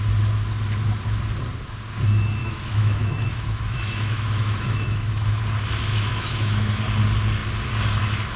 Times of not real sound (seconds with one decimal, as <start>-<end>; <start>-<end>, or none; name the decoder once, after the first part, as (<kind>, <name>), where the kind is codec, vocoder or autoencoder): 2.4-5.4 (autoencoder, DAC-VAE); 5.9-6.8